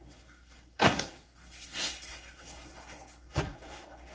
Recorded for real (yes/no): no